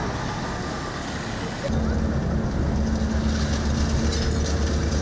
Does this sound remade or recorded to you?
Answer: recorded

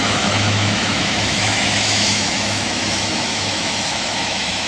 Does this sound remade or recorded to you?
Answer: remade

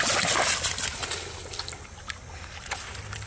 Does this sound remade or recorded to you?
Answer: recorded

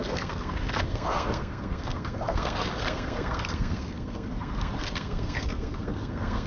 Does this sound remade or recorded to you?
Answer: remade